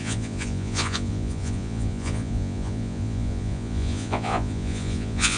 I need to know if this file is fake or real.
fake